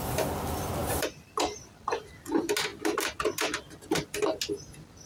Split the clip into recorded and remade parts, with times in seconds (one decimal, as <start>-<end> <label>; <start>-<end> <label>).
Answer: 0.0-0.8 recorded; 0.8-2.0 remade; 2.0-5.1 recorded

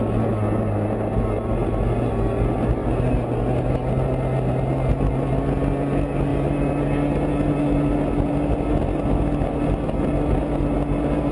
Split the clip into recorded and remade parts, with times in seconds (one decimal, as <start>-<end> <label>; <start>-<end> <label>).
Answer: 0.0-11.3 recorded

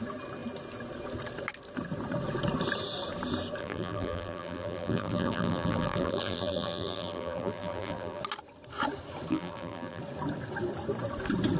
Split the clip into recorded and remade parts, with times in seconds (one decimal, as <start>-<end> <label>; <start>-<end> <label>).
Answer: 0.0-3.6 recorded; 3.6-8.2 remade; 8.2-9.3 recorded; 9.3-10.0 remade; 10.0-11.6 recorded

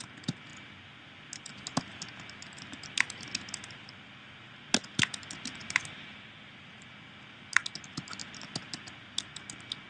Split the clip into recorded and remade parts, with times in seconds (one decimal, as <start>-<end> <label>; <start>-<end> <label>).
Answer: 0.0-5.6 recorded; 5.6-6.9 remade; 6.9-8.2 recorded; 8.2-9.1 remade; 9.1-9.9 recorded

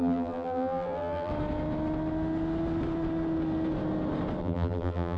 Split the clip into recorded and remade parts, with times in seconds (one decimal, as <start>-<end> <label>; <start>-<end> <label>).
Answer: 0.0-1.3 remade; 1.3-4.4 recorded; 4.4-5.2 remade

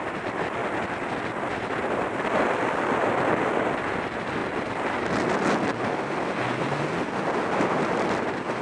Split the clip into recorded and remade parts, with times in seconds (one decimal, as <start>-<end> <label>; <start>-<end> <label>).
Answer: 0.0-8.6 recorded

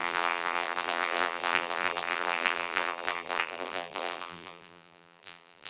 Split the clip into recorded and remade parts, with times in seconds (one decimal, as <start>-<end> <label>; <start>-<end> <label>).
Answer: 0.0-5.7 remade

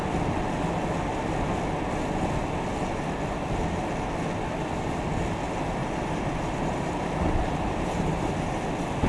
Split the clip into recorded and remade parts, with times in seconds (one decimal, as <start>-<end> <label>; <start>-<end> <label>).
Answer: 0.0-5.8 recorded; 5.8-8.3 remade; 8.3-9.1 recorded